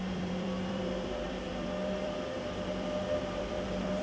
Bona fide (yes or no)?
no